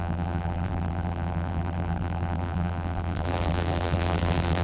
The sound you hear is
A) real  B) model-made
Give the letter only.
B